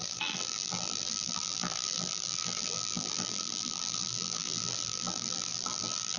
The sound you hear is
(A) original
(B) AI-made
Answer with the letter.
B